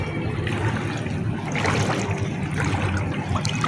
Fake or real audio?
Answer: real